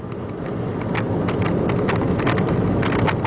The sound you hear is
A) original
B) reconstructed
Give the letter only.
A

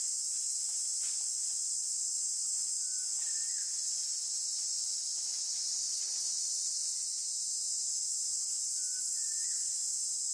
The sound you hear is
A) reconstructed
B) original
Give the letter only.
B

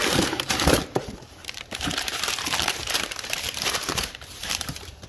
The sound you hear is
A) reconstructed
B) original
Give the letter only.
A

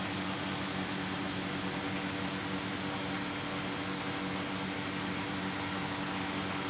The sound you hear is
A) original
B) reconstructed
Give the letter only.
A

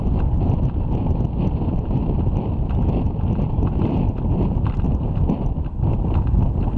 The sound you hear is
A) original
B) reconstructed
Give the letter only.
A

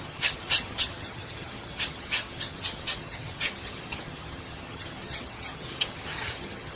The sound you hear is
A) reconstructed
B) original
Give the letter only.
A